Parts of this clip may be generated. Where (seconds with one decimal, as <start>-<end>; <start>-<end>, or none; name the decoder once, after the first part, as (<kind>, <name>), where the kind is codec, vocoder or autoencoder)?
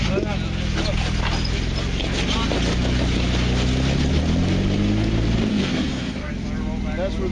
5.5-6.3 (codec, SNAC)